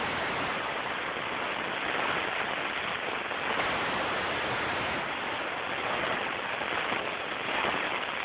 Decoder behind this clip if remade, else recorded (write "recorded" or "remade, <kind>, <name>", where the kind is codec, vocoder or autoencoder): recorded